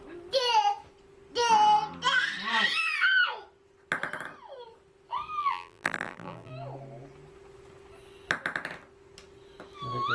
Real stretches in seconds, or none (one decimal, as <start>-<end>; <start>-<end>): 0.0-5.4; 6.5-10.1

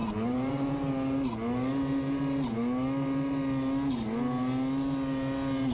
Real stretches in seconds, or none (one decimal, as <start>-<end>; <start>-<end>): 0.7-5.7

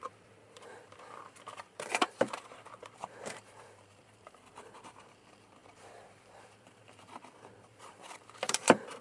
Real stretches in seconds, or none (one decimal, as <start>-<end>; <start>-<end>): none